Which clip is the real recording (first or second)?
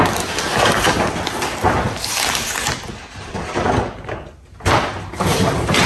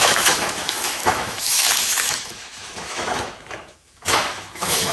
first